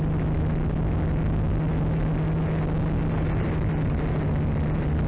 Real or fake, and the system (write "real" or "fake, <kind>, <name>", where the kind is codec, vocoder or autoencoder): real